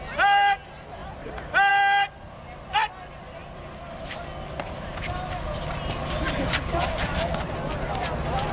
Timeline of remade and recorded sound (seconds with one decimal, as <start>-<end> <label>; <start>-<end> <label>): 0.0-8.5 recorded